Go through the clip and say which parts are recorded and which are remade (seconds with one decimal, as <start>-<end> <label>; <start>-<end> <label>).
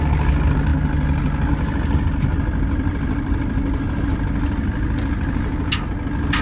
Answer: 0.0-6.4 recorded